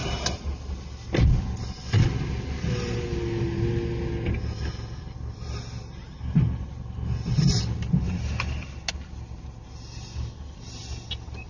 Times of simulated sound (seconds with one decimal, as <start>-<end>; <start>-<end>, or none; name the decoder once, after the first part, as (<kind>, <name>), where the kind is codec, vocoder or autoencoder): none